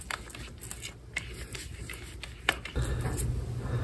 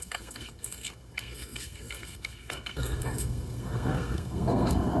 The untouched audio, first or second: first